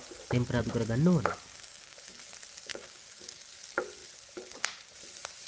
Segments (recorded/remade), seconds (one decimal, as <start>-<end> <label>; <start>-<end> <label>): 0.0-1.5 recorded; 1.5-2.1 remade; 2.1-2.7 recorded; 2.7-3.4 remade; 3.4-5.5 recorded